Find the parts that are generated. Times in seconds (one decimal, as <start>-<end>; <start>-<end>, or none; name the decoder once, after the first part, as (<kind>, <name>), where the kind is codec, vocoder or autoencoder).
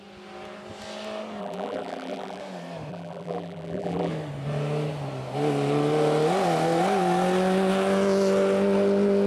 1.4-2.4 (vocoder, BigVGAN v2); 2.9-4.1